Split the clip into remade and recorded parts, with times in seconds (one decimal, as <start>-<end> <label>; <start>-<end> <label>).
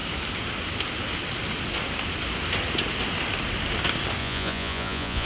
0.0-4.2 recorded; 4.2-5.3 remade